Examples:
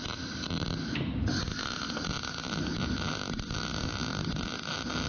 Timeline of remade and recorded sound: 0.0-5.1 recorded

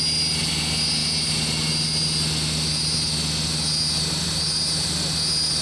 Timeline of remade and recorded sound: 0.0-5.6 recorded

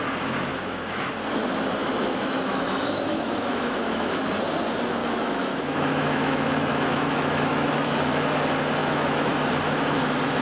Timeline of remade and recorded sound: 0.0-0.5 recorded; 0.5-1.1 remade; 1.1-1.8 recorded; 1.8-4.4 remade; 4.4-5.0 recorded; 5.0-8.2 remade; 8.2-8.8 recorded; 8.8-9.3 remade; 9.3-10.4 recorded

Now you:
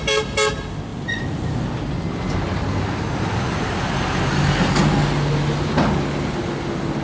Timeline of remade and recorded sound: 0.0-7.0 recorded

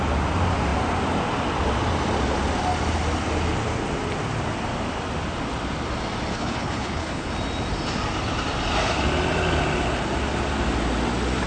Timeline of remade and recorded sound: 0.0-6.3 recorded; 6.3-7.3 remade; 7.3-11.5 recorded